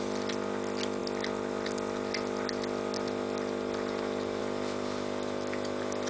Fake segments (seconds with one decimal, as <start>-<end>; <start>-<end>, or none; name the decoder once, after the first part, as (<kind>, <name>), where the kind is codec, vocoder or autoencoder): none